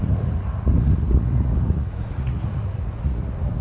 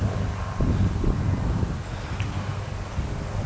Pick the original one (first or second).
second